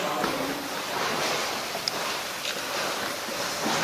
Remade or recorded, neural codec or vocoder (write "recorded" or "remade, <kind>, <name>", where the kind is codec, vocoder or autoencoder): recorded